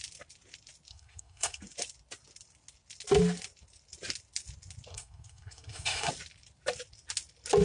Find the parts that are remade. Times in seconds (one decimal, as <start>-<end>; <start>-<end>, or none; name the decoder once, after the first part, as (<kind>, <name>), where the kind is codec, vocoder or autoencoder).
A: 0.9-1.6 (codec, SNAC); 4.9-6.1